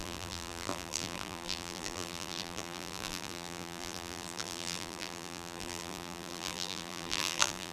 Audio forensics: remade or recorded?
remade